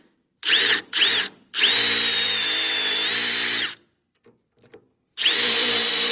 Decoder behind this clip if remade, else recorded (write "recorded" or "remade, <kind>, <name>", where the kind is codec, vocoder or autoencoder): remade, vocoder, BigVGAN v2